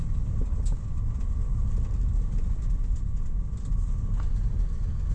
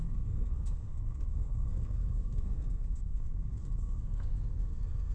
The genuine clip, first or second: first